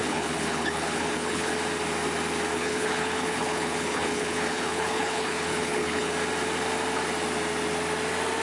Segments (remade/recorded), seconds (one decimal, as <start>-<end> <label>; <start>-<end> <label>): 0.0-1.5 remade; 1.5-2.5 recorded; 2.5-6.1 remade; 6.1-8.4 recorded